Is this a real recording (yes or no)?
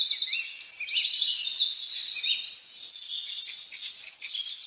yes